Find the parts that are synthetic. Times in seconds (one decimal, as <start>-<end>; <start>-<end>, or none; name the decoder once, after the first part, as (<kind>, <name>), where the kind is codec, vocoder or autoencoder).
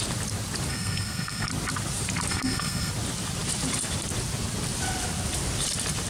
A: 0.7-1.5 (codec, SNAC); 2.3-2.9